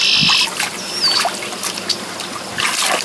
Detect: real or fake real